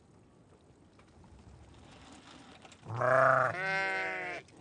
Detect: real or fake real